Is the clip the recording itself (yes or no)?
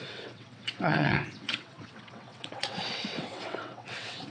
no